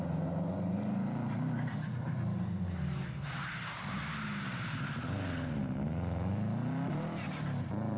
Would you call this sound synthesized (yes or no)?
no